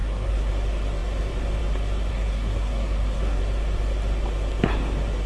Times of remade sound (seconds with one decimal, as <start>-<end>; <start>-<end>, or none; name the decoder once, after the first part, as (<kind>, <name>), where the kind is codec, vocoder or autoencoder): 0.0-0.5 (codec, SNAC); 2.1-3.4